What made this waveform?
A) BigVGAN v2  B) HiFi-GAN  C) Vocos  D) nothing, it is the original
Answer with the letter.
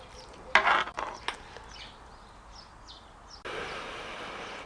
D